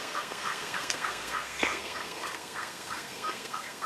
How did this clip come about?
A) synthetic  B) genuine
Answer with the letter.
A